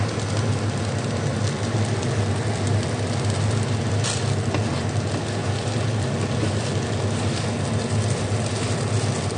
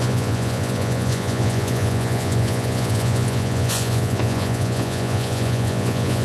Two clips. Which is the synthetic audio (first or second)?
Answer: second